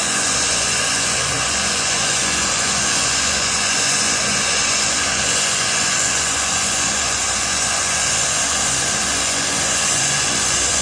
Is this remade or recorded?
remade